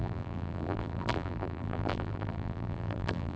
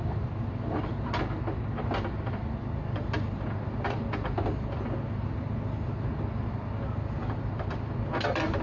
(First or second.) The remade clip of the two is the first